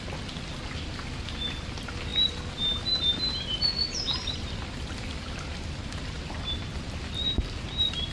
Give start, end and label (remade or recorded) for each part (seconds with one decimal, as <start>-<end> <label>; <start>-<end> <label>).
0.0-8.1 recorded